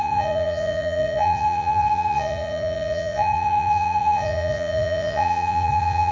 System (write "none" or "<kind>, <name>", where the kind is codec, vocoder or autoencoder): vocoder, Vocos